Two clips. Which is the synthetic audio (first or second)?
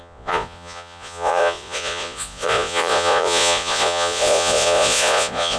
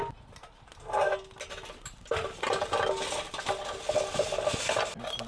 first